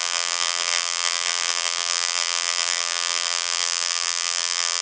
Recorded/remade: remade